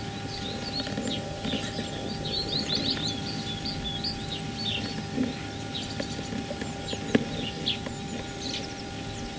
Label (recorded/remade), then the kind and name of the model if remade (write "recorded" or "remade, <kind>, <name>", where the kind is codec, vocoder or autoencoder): recorded